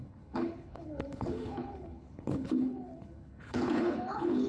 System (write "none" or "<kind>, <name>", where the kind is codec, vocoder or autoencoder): codec, HILCodec